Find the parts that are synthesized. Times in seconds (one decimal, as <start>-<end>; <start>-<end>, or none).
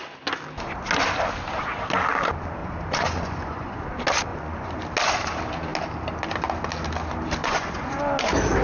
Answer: 2.6-3.8; 4.3-4.8; 7.4-8.0